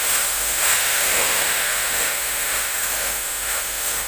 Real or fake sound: fake